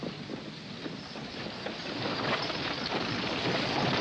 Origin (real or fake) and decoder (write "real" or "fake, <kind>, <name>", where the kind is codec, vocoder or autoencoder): real